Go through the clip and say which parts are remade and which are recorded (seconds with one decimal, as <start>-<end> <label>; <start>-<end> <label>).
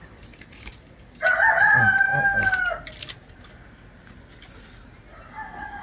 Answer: 0.0-5.8 recorded